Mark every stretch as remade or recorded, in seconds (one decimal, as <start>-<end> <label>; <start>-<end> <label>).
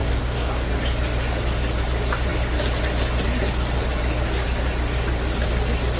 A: 0.0-0.7 remade; 0.7-6.0 recorded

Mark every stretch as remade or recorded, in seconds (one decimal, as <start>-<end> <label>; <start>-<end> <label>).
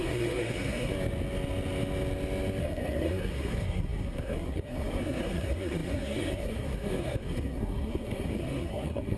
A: 0.0-0.9 remade; 0.9-2.6 recorded; 2.6-9.2 remade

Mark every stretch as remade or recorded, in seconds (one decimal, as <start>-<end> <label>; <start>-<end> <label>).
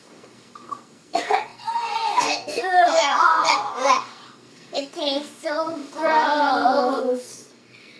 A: 0.0-8.0 remade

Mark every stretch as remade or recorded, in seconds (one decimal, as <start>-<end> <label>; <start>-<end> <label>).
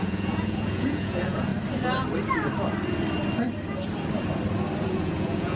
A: 0.0-1.5 remade; 1.5-4.9 recorded; 4.9-5.6 remade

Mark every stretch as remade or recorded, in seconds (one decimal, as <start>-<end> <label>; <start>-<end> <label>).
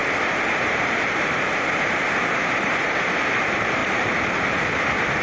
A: 0.0-3.1 remade; 3.1-3.8 recorded; 3.8-4.6 remade; 4.6-5.2 recorded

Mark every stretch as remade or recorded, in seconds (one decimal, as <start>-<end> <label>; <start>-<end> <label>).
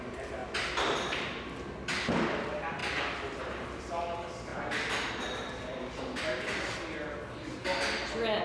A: 0.0-8.4 recorded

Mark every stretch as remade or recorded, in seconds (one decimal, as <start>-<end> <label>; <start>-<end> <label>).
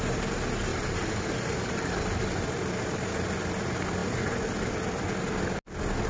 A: 0.0-0.7 recorded; 0.7-2.4 remade; 2.4-6.1 recorded